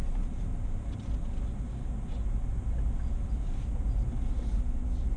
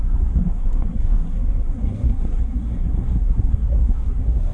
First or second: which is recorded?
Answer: first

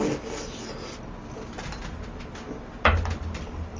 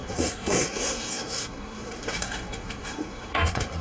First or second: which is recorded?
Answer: first